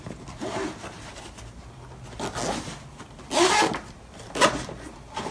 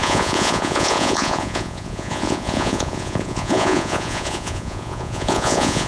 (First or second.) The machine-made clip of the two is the second